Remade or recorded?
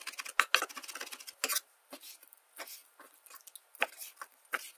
recorded